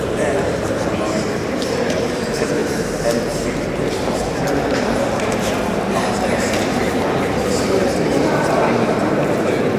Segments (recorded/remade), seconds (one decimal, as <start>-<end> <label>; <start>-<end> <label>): 0.0-2.6 remade; 2.6-3.5 recorded; 3.5-8.1 remade; 8.1-9.8 recorded